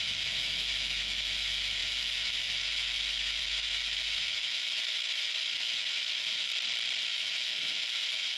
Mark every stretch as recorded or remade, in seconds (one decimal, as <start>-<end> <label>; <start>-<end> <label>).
0.0-6.5 remade; 6.5-7.0 recorded; 7.0-8.4 remade